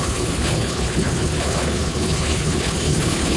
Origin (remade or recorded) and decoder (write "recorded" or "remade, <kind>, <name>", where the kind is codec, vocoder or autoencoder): remade, codec, HILCodec